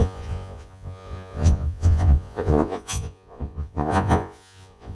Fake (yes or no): yes